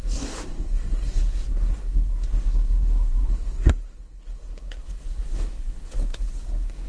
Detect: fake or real fake